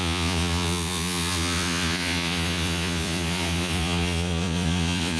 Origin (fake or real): fake